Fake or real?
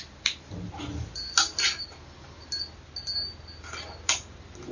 real